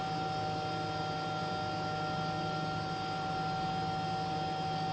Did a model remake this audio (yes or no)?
no